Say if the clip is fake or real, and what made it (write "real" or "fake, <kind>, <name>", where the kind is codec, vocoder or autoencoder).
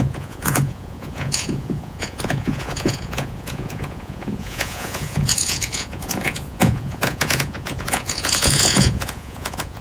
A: fake, vocoder, Vocos